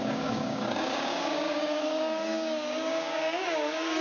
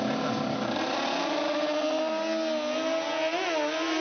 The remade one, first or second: first